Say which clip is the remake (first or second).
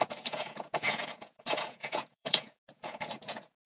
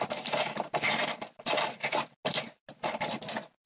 first